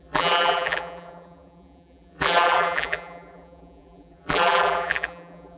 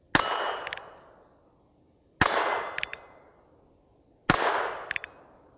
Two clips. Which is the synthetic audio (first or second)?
first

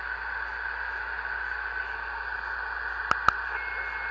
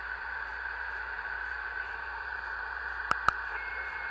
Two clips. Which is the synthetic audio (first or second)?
second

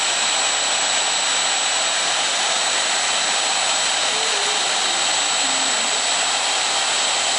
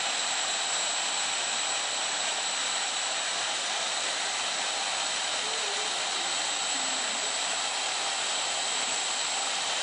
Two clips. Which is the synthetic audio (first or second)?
second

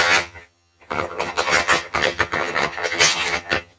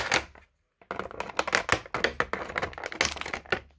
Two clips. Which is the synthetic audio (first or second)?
first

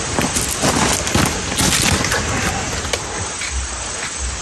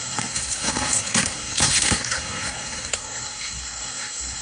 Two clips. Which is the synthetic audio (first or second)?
second